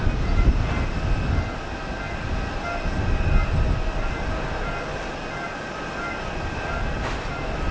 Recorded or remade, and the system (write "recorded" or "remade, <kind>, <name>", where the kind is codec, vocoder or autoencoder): recorded